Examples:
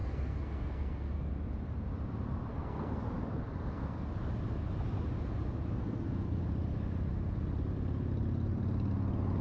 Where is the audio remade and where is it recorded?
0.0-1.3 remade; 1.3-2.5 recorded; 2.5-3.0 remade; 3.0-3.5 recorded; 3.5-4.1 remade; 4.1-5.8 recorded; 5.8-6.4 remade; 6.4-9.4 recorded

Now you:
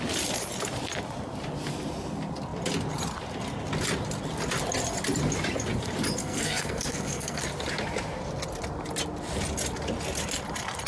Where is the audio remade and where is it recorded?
0.0-6.2 recorded; 6.2-7.4 remade; 7.4-10.9 recorded

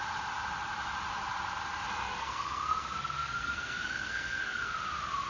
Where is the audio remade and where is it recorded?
0.0-2.2 recorded; 2.2-4.7 remade; 4.7-5.3 recorded

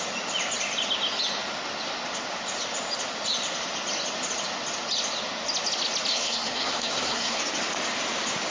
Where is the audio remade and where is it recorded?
0.0-6.1 recorded; 6.1-7.4 remade; 7.4-8.5 recorded

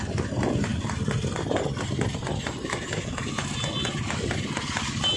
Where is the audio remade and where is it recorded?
0.0-5.2 recorded

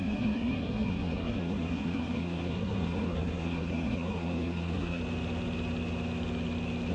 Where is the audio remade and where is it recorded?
0.0-5.0 remade; 5.0-6.9 recorded

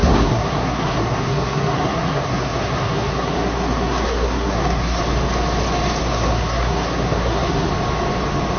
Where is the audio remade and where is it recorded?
0.0-5.0 remade; 5.0-6.0 recorded; 6.0-7.7 remade; 7.7-8.6 recorded